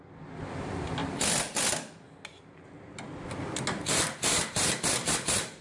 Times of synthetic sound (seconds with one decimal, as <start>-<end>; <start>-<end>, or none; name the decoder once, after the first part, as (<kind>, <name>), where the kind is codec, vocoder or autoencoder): none